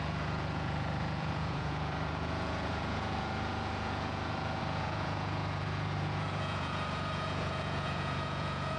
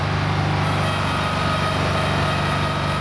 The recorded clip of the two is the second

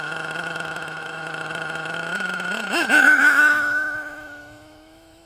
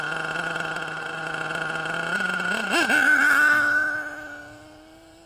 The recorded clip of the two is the second